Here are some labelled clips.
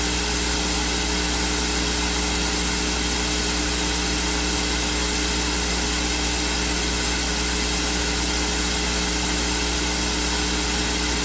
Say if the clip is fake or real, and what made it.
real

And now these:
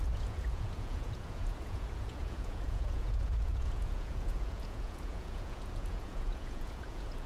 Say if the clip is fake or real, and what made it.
fake, vocoder, Vocos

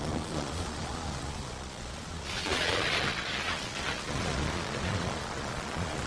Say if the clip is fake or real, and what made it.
fake, vocoder, Vocos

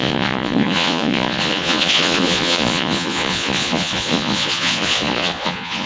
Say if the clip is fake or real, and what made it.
fake, vocoder, Vocos